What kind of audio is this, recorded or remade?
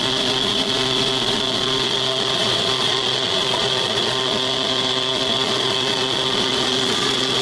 remade